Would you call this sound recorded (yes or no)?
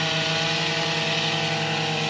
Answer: yes